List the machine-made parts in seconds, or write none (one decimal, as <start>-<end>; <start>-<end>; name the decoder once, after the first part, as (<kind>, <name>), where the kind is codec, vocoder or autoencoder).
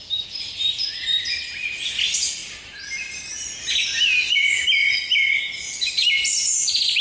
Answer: 0.5-1.9 (vocoder, BigVGAN v2)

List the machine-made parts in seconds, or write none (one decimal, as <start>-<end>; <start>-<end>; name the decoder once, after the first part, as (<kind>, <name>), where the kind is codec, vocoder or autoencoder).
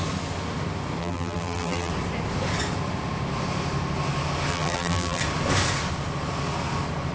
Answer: 1.0-1.9 (vocoder, BigVGAN v2); 4.5-5.2